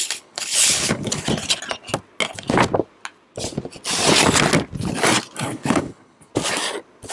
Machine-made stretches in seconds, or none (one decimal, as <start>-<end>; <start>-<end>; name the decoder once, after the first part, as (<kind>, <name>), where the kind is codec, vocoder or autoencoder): 0.0-1.1 (codec, HILCodec); 5.4-6.3